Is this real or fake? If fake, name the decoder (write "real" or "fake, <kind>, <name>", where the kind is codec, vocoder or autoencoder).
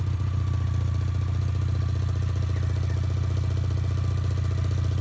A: real